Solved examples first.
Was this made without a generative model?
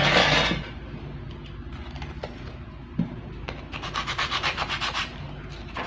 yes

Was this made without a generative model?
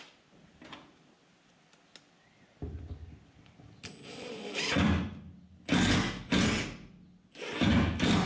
yes